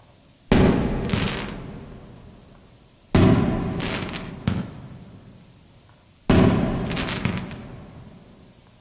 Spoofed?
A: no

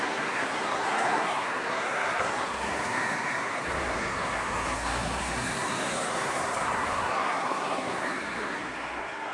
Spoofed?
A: yes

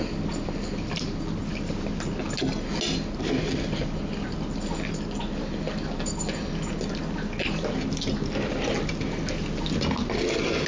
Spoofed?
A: no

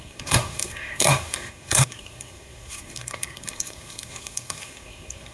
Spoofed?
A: yes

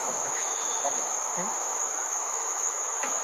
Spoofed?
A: yes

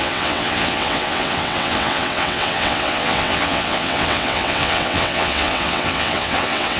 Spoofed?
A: yes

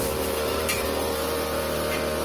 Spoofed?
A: no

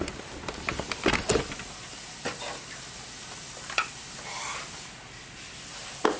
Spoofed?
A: no